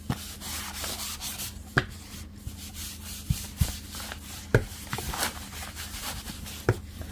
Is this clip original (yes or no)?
no